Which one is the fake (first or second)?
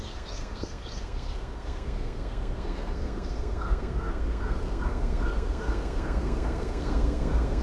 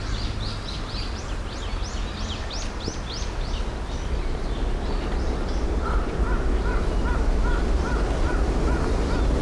first